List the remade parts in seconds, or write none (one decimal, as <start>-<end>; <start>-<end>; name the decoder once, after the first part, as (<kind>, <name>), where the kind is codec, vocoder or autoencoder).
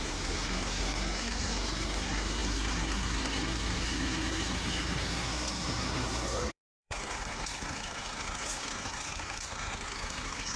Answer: 0.0-10.6 (codec, SNAC)